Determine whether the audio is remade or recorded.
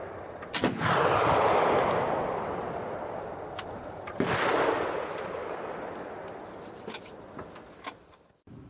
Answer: recorded